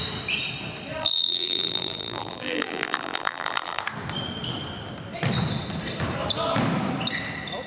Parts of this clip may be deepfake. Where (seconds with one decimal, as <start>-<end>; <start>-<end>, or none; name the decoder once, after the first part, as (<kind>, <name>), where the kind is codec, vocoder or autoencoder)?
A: 1.0-3.8 (vocoder, BigVGAN v2)